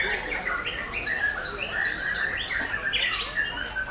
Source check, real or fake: real